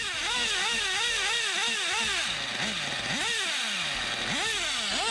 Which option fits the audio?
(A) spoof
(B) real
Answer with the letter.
B